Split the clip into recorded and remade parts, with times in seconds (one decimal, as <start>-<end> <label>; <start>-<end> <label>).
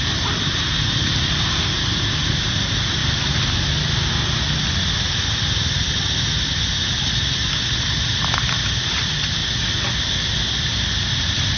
0.0-11.6 recorded